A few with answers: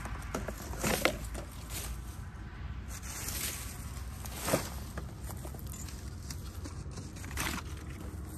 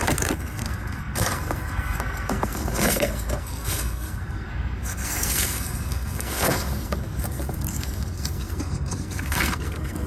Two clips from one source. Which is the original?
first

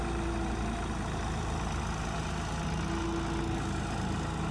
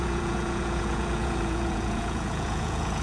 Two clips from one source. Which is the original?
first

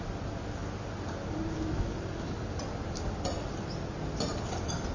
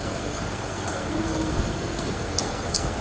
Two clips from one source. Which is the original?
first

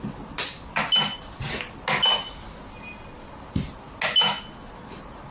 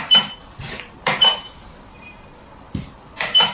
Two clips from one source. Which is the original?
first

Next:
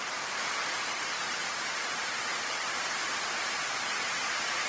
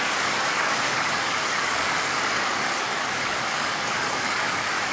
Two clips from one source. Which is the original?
first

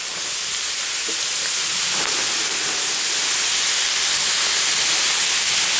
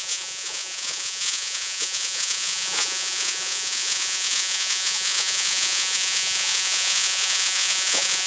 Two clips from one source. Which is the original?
first